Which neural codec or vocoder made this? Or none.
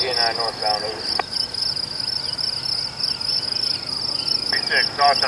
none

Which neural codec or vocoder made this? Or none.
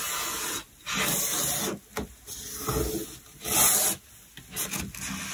none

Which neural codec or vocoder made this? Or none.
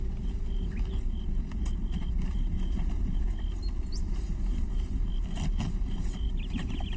none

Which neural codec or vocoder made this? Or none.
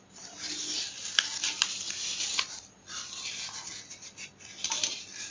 none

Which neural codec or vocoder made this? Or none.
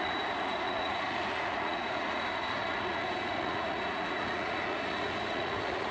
vocoder, Vocos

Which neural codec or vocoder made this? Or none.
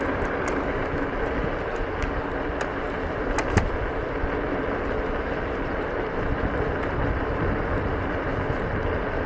none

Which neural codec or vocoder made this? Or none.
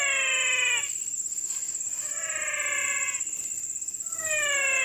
none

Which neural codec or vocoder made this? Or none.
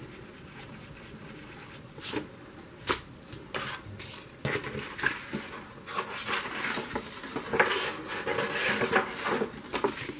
none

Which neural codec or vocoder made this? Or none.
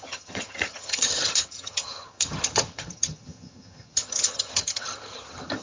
vocoder, HiFi-GAN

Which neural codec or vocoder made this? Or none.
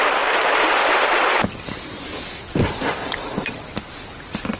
none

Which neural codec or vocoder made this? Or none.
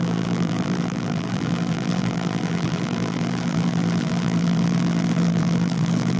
vocoder, BigVGAN v2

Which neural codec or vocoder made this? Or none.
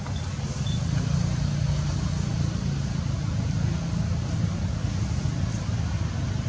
none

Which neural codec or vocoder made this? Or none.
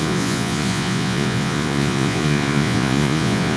vocoder, Vocos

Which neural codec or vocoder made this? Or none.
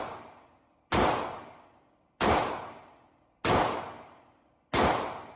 none